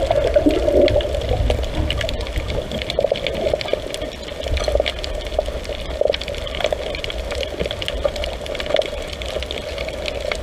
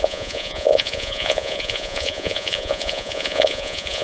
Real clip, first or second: first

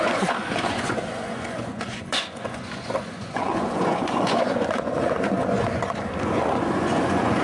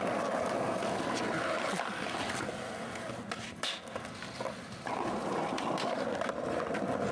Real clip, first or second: second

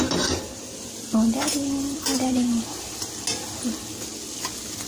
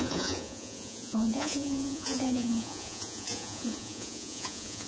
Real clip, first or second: first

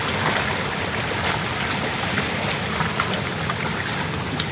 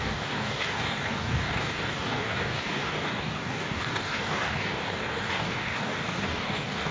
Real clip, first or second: first